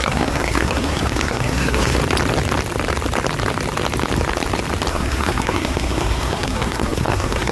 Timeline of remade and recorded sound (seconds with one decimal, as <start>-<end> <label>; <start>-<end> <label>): 0.0-2.0 remade; 2.0-4.9 recorded; 4.9-7.5 remade